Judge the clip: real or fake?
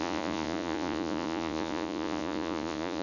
fake